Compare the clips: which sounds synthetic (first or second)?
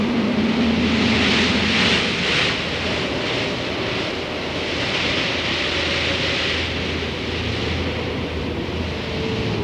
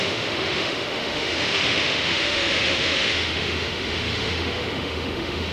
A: second